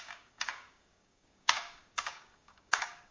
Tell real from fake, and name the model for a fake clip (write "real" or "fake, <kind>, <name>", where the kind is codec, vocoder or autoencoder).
fake, codec, DAC